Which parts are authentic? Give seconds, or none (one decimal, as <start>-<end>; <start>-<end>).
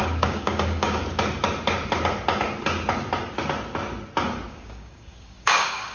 1.0-4.5